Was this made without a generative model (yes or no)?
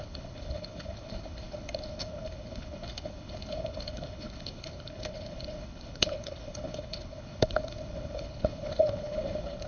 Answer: no